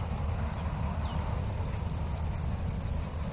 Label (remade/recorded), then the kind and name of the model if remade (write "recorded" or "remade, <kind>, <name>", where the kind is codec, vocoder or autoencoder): recorded